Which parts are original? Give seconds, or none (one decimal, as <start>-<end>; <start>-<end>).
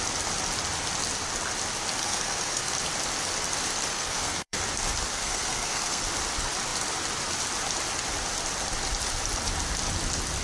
0.0-2.0; 2.7-3.9; 4.6-5.1; 6.0-10.4